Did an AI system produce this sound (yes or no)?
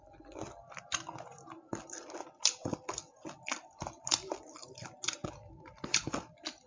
no